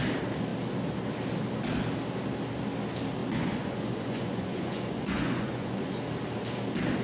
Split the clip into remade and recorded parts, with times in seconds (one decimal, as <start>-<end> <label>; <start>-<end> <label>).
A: 0.0-3.2 recorded; 3.2-6.0 remade; 6.0-7.0 recorded